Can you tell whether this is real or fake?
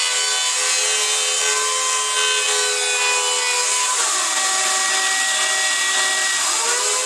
real